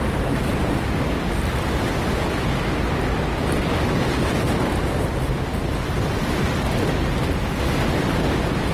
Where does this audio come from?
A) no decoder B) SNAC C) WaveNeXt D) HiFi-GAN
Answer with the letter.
A